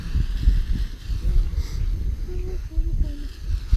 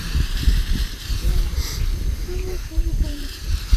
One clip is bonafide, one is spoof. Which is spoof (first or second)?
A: second